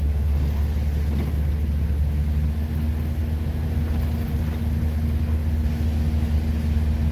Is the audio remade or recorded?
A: recorded